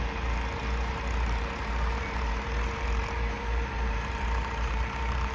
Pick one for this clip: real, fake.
fake